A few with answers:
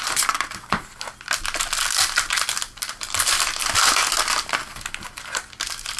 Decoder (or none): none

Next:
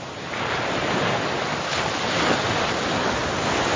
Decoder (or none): none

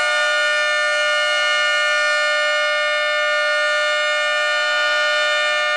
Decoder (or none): none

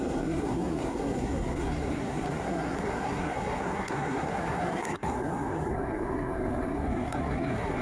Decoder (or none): codec, SNAC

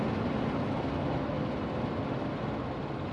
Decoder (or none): none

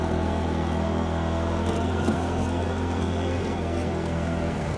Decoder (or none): codec, SNAC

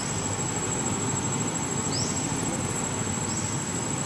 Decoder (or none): none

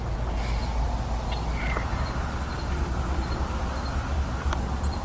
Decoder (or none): none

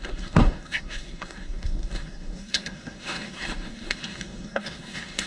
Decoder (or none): codec, SNAC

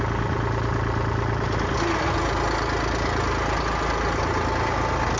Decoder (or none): none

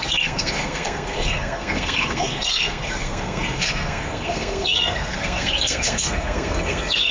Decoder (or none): codec, SNAC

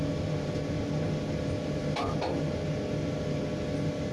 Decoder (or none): none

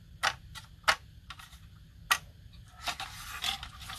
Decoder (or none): none